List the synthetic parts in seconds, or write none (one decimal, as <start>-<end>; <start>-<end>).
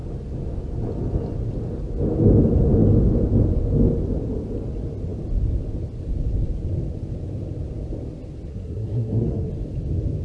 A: 8.5-9.5